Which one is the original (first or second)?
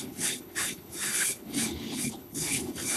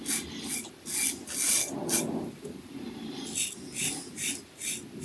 second